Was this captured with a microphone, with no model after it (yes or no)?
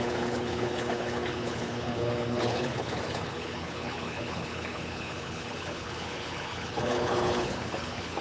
no